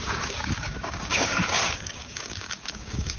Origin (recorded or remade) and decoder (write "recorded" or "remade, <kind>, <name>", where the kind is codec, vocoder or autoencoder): remade, codec, DAC